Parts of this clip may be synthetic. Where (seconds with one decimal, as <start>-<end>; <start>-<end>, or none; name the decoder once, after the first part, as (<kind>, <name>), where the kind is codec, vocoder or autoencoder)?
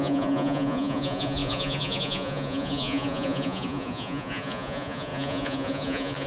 0.0-6.3 (vocoder, Vocos)